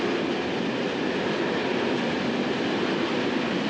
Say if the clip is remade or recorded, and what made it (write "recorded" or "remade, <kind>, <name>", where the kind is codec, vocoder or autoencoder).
recorded